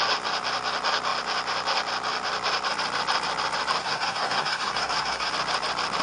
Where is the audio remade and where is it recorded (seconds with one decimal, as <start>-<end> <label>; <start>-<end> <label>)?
0.0-3.8 recorded; 3.8-5.3 remade; 5.3-6.0 recorded